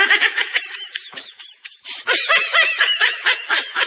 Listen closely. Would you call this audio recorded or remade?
remade